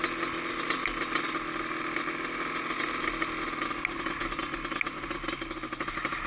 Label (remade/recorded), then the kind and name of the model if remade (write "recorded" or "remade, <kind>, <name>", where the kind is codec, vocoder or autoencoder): recorded